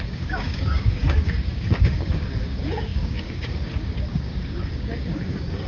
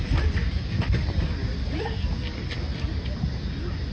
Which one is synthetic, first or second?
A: first